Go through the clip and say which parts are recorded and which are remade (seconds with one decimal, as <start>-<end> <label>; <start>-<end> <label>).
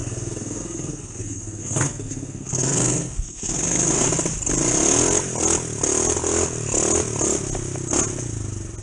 0.0-4.1 remade; 4.1-8.8 recorded